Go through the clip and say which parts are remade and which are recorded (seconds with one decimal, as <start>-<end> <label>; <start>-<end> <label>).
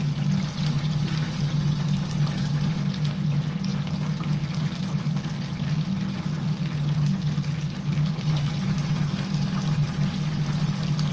0.0-11.1 recorded